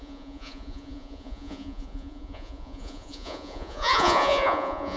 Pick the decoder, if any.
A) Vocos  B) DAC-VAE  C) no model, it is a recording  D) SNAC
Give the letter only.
A